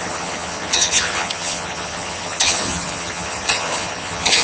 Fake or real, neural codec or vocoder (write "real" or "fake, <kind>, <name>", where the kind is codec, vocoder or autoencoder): fake, vocoder, HiFi-GAN